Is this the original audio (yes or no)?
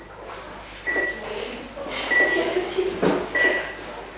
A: yes